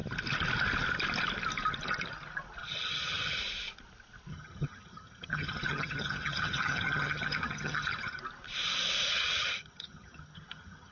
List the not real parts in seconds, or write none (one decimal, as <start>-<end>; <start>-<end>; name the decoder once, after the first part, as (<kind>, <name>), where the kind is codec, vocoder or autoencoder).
2.6-3.4 (vocoder, HiFi-GAN); 4.3-8.2; 9.1-10.9